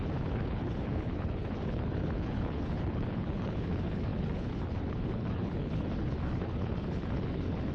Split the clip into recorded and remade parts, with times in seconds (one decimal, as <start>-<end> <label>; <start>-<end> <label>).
0.0-7.7 remade